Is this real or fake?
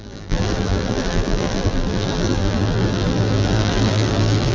fake